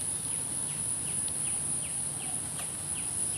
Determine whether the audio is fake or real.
real